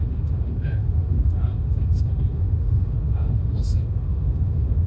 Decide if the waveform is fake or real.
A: fake